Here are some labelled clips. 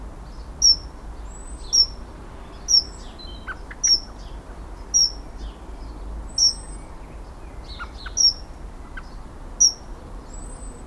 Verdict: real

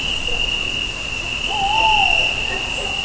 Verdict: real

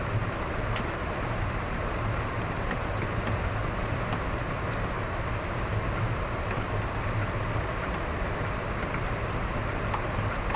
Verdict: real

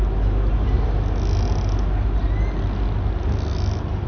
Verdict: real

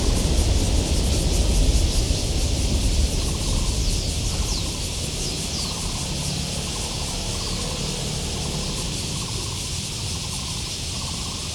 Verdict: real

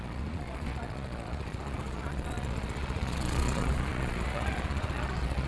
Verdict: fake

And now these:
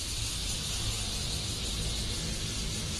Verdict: real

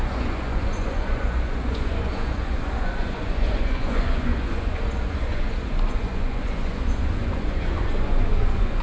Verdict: fake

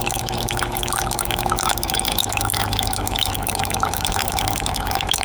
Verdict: fake